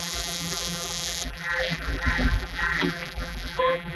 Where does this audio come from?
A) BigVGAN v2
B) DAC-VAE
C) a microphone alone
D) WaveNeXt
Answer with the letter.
A